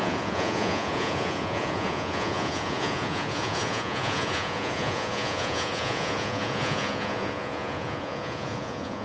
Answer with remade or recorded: remade